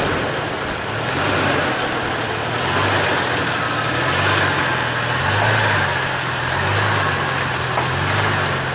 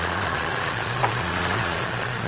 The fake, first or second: second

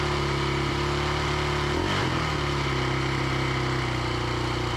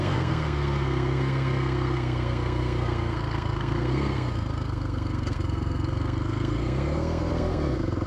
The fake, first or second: second